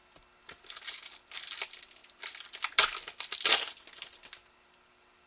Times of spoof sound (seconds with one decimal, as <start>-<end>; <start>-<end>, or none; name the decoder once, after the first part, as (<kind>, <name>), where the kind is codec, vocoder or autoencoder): none

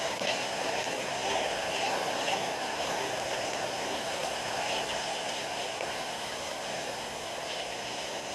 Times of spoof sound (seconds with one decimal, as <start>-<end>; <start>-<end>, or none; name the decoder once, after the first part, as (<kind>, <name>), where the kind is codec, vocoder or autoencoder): 0.0-8.3 (codec, SNAC)

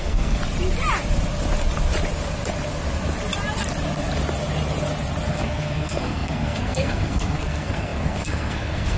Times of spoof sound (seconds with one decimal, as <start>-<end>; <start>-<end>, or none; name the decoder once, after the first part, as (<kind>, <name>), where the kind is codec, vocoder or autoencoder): 0.0-0.4 (codec, SNAC); 5.3-9.0

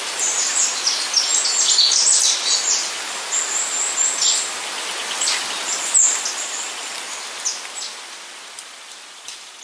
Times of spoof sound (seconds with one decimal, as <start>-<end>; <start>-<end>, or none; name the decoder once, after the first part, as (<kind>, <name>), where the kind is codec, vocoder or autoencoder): none